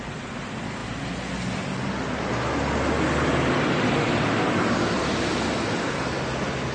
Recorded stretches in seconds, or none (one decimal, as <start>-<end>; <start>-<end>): 0.0-6.7